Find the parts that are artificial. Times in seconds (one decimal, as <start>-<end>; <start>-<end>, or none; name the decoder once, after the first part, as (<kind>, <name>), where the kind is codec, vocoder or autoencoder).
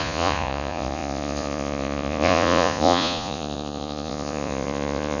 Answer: 0.0-5.2 (vocoder, Vocos)